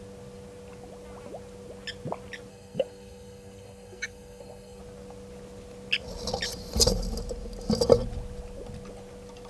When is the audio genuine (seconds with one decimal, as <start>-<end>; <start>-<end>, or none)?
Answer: 0.0-2.5; 4.8-9.5

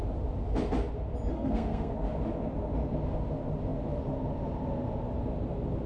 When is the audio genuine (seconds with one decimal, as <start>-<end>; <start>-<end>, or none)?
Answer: 0.0-1.3; 1.9-5.9

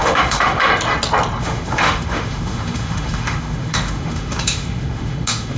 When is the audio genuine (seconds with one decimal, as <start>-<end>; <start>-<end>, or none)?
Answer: 0.7-1.4

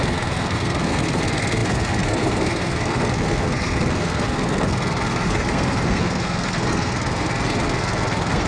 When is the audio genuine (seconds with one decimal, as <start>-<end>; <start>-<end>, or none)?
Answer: none

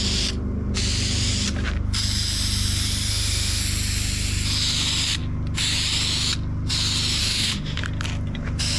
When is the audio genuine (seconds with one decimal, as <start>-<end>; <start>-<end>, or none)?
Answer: 0.0-3.1; 3.6-7.2; 7.8-8.8

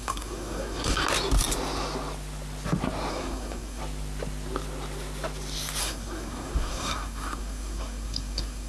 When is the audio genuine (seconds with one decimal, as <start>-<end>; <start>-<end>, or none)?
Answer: 1.0-3.1; 3.8-5.8